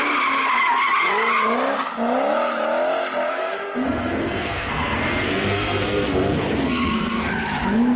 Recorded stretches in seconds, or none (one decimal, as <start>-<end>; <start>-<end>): 0.0-3.3; 7.3-8.0